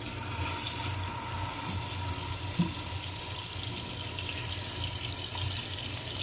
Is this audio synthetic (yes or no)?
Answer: no